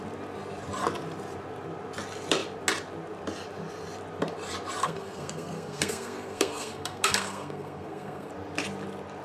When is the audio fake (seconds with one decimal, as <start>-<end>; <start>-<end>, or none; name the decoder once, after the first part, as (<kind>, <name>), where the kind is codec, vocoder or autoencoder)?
4.8-8.3 (codec, SNAC)